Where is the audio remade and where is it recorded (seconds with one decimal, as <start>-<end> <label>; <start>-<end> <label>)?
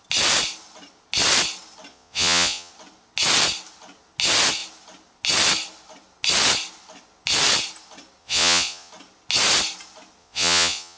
0.0-1.9 recorded; 1.9-2.7 remade; 2.7-8.2 recorded; 8.2-8.9 remade; 8.9-10.2 recorded; 10.2-11.0 remade